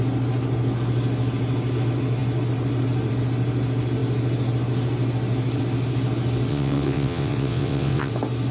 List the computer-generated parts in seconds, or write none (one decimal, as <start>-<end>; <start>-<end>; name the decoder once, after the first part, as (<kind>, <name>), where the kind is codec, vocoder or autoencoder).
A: 6.5-8.1 (vocoder, WaveNeXt)